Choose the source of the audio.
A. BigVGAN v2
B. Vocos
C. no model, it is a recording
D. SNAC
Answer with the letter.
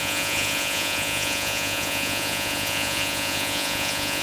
B